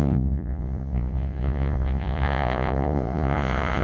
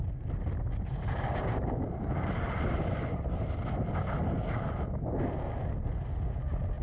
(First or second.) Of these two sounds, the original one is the second